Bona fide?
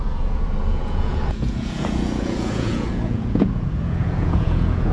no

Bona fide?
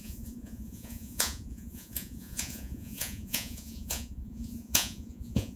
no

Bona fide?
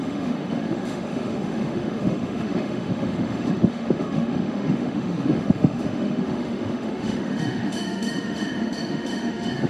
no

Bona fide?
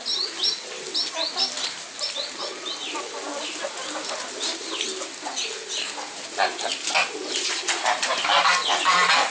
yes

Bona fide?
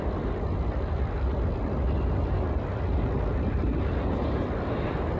yes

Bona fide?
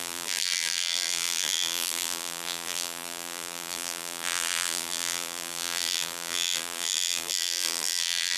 no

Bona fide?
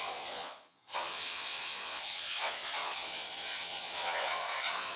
no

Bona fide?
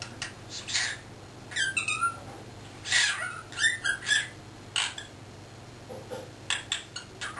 yes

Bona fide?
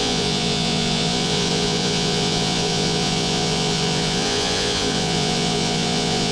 no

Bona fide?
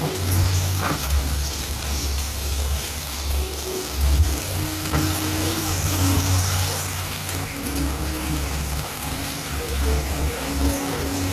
no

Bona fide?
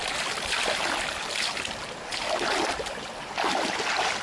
yes